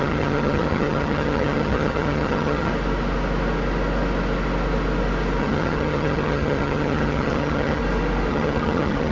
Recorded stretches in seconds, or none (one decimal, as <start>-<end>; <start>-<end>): 2.7-5.4; 7.8-8.3